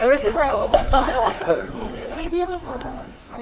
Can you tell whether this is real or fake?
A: fake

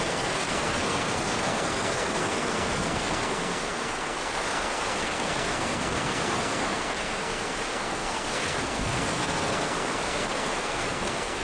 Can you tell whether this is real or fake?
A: fake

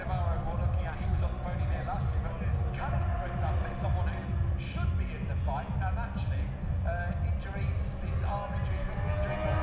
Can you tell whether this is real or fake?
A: real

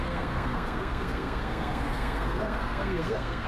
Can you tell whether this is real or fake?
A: fake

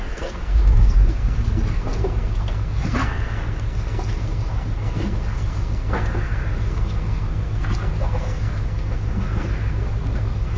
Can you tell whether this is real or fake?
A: fake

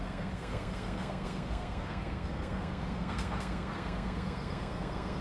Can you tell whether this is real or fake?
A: fake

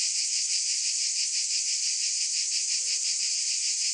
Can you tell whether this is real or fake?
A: real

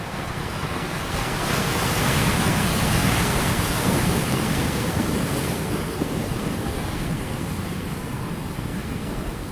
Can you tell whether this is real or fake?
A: fake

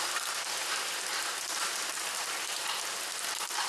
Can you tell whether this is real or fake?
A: real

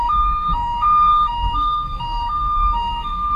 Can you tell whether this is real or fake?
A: fake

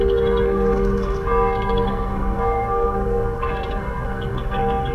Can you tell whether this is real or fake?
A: fake